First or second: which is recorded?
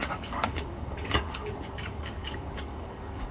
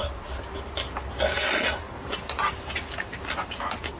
second